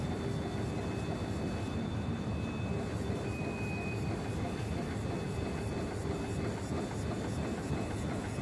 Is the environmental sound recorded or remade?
recorded